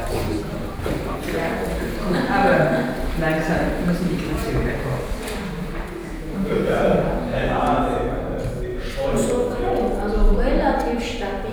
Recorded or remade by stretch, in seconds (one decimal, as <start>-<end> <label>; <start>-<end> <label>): 0.0-6.0 recorded; 6.0-6.6 remade; 6.6-7.3 recorded; 7.3-8.1 remade; 8.1-8.7 recorded; 8.7-9.7 remade; 9.7-11.5 recorded